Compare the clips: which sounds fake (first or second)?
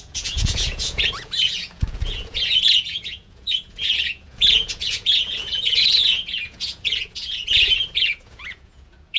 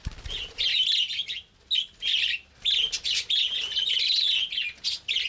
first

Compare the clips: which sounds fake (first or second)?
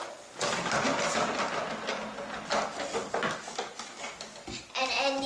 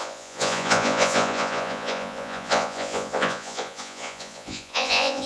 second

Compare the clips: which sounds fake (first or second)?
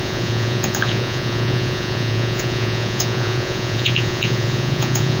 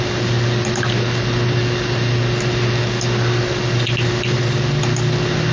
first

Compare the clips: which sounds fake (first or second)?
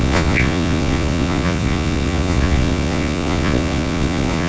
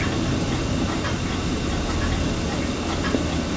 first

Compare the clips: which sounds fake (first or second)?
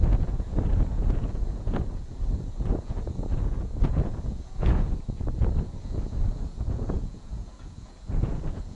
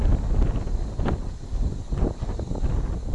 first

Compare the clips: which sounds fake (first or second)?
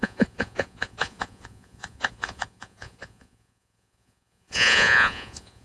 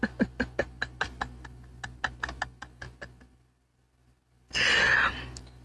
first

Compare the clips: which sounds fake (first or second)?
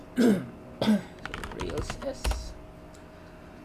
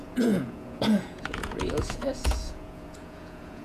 second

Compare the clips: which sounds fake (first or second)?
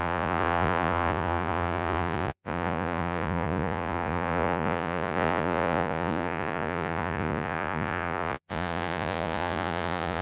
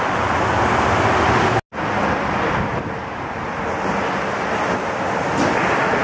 first